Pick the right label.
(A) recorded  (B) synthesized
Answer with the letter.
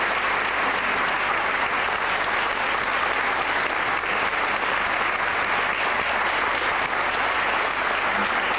A